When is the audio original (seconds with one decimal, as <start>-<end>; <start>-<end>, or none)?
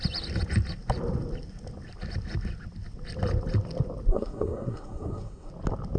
0.0-4.1; 5.5-6.0